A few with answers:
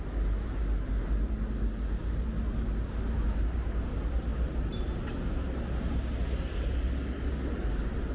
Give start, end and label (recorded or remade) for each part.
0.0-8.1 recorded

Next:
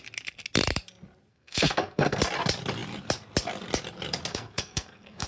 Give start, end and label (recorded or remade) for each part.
0.0-1.3 recorded; 1.3-2.2 remade; 2.2-4.3 recorded; 4.3-5.3 remade

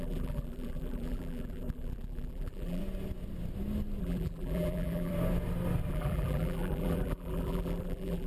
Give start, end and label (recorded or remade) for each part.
0.0-2.8 remade; 2.8-4.0 recorded; 4.0-5.1 remade; 5.1-5.9 recorded; 5.9-8.3 remade